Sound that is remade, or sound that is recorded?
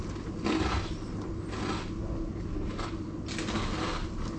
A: recorded